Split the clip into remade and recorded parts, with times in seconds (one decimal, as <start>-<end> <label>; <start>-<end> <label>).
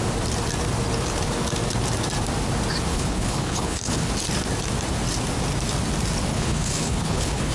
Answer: 0.0-2.9 recorded; 2.9-4.1 remade; 4.1-6.3 recorded; 6.3-7.5 remade